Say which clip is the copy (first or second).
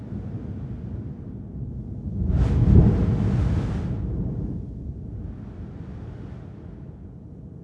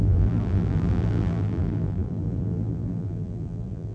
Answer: second